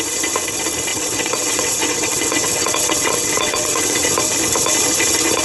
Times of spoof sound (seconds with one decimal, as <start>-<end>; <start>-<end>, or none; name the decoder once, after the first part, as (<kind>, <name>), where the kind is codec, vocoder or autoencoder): 0.9-4.1 (vocoder, WaveNeXt)